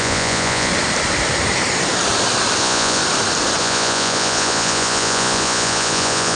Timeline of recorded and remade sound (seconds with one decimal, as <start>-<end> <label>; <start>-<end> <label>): 0.0-0.7 remade; 0.7-2.6 recorded; 2.6-3.0 remade; 3.0-3.6 recorded; 3.6-6.3 remade

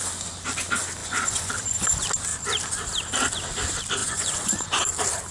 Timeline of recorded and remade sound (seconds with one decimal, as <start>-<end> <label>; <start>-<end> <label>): 0.0-1.0 recorded; 1.0-1.5 remade; 1.5-4.0 recorded; 4.0-4.8 remade; 4.8-5.3 recorded